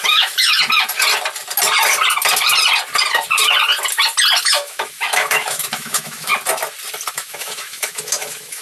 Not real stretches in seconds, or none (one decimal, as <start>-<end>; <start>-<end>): 0.0-0.6; 4.4-6.3; 7.1-8.6